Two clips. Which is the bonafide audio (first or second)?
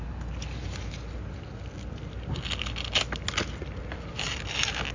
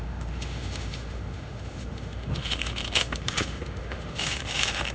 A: first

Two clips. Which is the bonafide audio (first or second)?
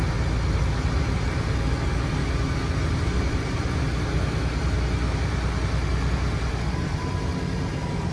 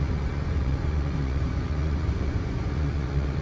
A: first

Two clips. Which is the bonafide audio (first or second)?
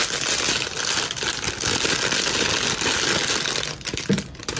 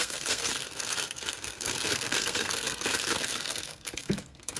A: first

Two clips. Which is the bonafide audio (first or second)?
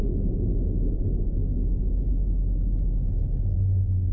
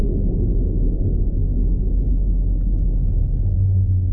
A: first